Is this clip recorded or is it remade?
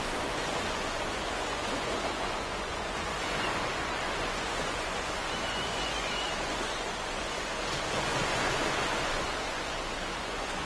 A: remade